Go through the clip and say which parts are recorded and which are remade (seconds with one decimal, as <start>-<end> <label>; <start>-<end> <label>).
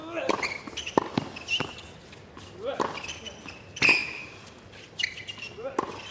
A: 0.0-6.1 recorded